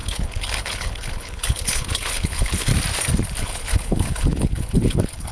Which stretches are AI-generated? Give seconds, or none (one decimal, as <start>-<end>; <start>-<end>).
0.0-2.7; 3.4-5.3